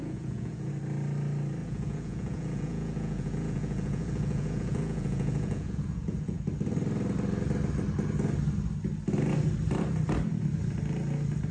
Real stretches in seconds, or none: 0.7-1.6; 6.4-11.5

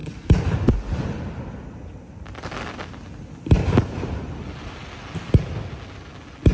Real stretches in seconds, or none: 0.0-6.5

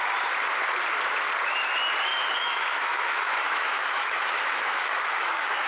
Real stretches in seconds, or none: 0.0-2.1

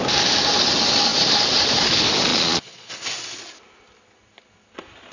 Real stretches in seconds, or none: 0.0-2.3; 2.9-5.1

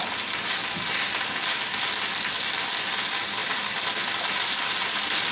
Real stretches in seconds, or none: 0.0-5.3